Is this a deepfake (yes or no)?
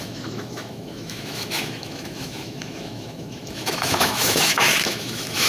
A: yes